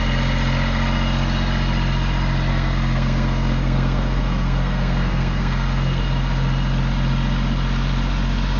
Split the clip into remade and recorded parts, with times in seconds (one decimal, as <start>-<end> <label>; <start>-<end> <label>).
0.0-2.5 recorded; 2.5-6.0 remade; 6.0-8.6 recorded